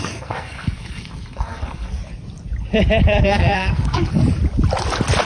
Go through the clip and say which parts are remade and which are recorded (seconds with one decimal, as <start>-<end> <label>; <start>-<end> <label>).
0.0-2.0 remade; 2.0-3.2 recorded; 3.2-4.2 remade; 4.2-5.2 recorded